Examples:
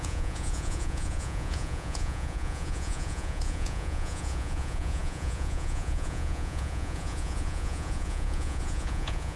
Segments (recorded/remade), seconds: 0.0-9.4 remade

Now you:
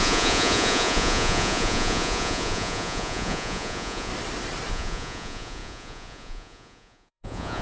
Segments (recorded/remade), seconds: 0.0-4.1 remade; 4.1-4.7 recorded; 4.7-7.6 remade

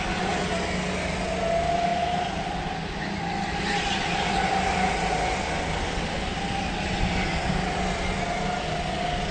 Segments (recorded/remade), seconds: 0.0-9.3 recorded

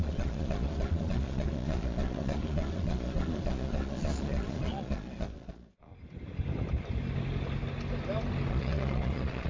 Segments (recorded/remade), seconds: 0.0-5.9 remade; 5.9-8.5 recorded; 8.5-9.5 remade

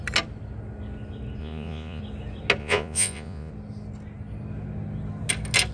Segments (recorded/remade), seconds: 0.0-1.4 recorded; 1.4-2.0 remade; 2.0-2.6 recorded; 2.6-3.5 remade; 3.5-5.7 recorded